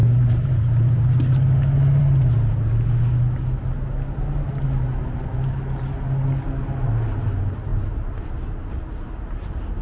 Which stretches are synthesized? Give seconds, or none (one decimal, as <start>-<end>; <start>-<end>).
0.0-1.1